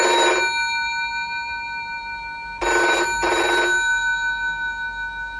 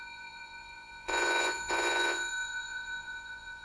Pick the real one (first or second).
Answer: first